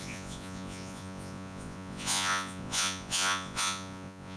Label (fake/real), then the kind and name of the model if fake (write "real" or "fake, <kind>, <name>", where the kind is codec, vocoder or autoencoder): fake, vocoder, Vocos